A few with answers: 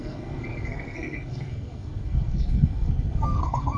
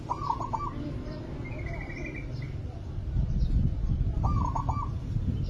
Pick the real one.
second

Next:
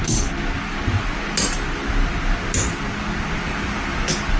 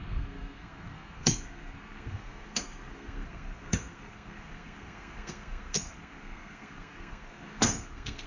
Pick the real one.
first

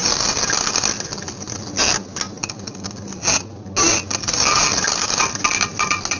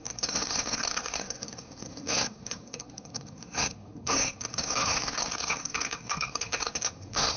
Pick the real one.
first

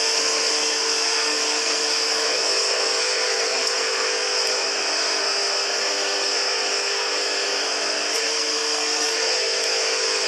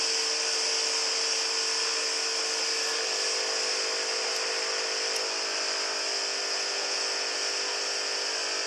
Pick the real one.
second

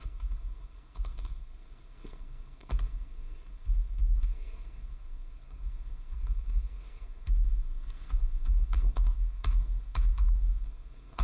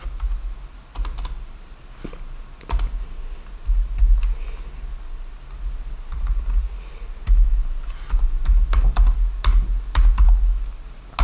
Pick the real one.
second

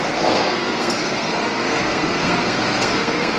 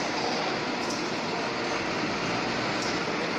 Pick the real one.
second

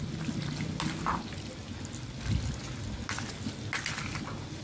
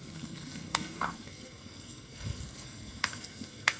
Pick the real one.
first